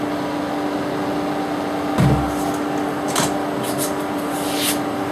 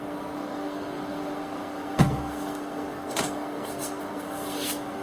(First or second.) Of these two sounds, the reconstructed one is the second